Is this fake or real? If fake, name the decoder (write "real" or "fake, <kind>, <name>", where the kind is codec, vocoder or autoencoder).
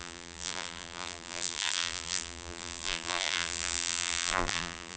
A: fake, vocoder, BigVGAN v2